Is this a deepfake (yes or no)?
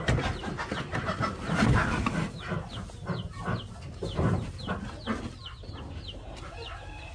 no